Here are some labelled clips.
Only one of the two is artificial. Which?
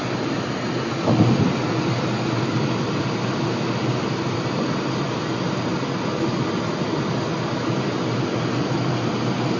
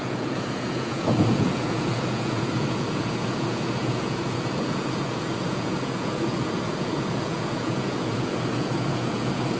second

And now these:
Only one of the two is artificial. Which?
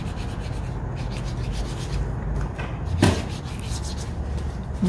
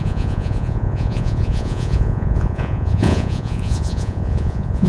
second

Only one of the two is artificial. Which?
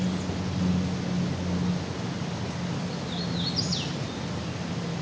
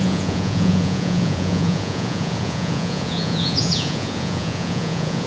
second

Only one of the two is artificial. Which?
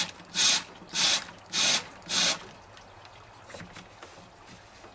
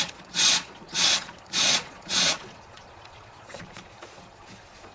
second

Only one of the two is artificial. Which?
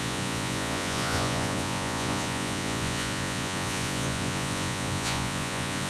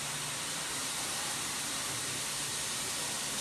first